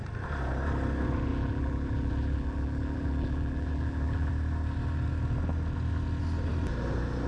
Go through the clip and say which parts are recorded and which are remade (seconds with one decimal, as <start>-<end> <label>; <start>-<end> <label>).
0.0-1.3 recorded; 1.3-4.3 remade; 4.3-7.3 recorded